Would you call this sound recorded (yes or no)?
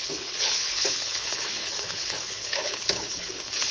no